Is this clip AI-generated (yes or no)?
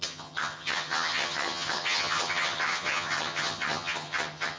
yes